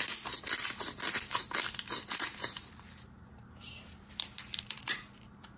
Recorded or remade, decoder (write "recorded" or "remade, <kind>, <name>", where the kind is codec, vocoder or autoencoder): remade, vocoder, BigVGAN v2